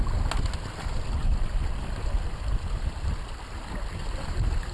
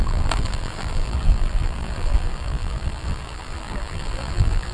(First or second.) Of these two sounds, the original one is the first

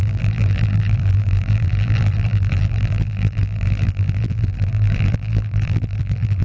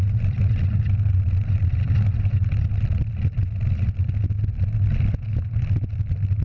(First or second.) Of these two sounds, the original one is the second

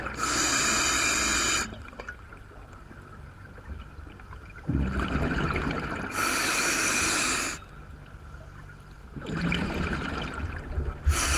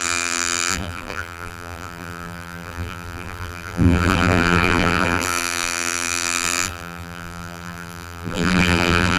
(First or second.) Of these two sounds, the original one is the first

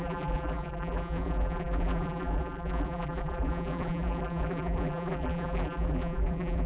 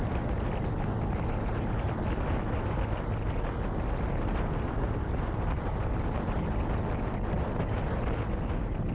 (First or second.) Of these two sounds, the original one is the second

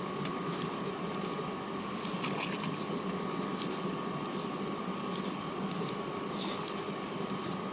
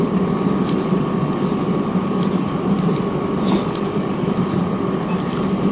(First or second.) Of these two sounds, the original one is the first